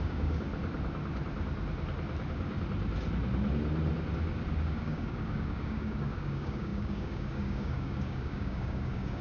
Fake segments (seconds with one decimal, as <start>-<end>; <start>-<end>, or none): 0.0-0.5; 4.6-9.2